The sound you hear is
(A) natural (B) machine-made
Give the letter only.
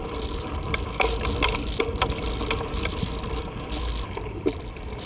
B